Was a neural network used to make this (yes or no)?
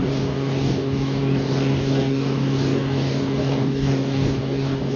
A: yes